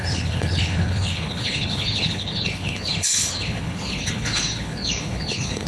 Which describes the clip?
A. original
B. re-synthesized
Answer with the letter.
B